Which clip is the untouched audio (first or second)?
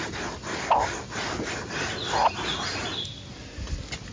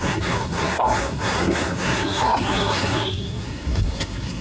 first